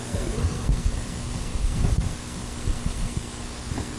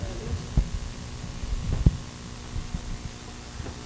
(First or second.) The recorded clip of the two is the second